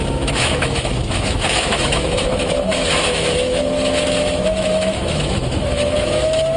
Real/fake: fake